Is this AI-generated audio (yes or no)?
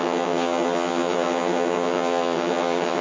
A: yes